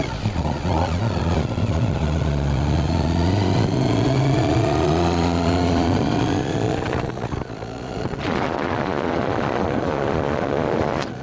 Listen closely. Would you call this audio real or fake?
fake